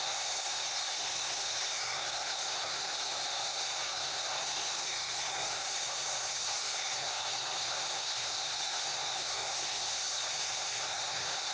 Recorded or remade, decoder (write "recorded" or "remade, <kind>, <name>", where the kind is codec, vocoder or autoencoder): remade, codec, SNAC